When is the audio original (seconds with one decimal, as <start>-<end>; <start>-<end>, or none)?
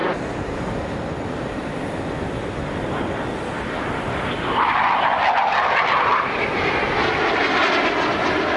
0.8-8.6